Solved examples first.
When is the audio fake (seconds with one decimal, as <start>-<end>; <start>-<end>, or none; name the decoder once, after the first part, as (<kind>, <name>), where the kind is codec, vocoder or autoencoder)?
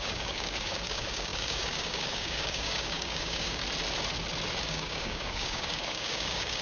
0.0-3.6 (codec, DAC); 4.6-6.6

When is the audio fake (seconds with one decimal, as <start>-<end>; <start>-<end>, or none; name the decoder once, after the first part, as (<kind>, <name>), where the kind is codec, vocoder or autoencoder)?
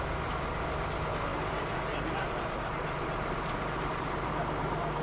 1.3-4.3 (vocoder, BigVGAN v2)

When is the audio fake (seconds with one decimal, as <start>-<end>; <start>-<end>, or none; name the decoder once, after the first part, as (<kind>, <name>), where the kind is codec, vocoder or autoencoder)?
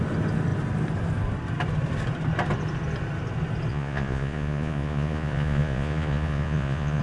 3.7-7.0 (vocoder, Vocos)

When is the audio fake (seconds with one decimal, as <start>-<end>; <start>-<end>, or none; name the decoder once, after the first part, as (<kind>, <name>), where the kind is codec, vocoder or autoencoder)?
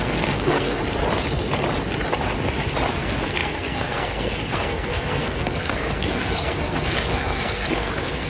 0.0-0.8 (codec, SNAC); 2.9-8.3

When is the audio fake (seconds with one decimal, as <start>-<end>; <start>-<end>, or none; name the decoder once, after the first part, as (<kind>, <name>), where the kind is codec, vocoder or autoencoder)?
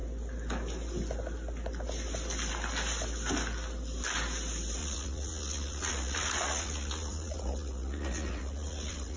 4.8-9.2 (vocoder, Vocos)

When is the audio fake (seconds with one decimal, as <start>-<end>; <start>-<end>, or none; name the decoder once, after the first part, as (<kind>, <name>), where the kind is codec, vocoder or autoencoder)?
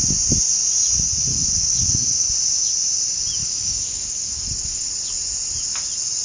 1.3-2.3 (codec, DAC); 3.4-4.9